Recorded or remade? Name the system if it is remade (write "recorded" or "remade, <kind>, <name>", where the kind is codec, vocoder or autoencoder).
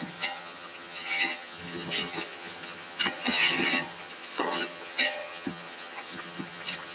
remade, vocoder, HiFi-GAN